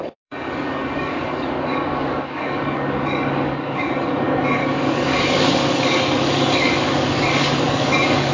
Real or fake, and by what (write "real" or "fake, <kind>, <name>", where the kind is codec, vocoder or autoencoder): fake, codec, DAC